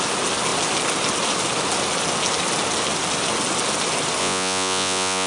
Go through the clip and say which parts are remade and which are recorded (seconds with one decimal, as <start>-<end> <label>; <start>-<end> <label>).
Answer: 0.0-4.2 recorded; 4.2-5.3 remade